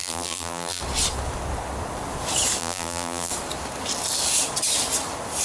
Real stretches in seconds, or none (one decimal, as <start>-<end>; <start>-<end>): 0.8-2.6; 3.3-5.4